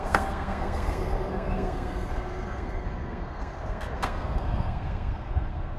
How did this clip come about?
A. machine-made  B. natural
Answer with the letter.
A